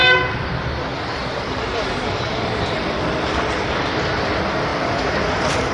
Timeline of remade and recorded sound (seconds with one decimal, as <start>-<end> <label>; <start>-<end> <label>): 0.0-0.6 remade; 0.6-1.2 recorded; 1.2-3.6 remade; 3.6-4.7 recorded; 4.7-5.7 remade